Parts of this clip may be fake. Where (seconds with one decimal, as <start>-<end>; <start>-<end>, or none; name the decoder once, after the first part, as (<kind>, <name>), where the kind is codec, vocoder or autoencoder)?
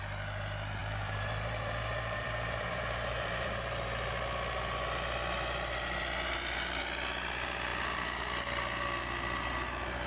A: 0.8-3.5 (vocoder, BigVGAN v2)